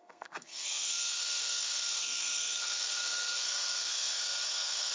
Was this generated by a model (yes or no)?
yes